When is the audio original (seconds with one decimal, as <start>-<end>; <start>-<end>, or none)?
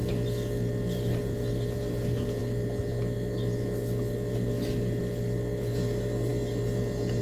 0.0-7.2